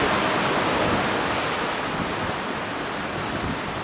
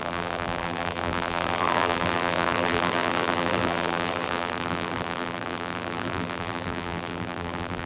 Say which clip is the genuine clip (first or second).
first